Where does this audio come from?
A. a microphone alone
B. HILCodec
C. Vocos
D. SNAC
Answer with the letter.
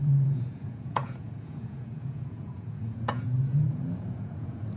C